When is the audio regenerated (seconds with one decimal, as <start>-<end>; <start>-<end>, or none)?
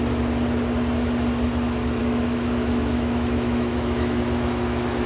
2.0-5.1